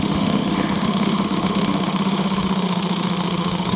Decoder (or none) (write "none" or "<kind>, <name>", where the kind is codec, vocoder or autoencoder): autoencoder, DAC-VAE